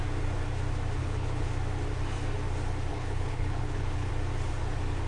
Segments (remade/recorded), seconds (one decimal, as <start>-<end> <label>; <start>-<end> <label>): 0.0-1.0 recorded; 1.0-1.5 remade; 1.5-2.9 recorded; 2.9-4.1 remade; 4.1-5.1 recorded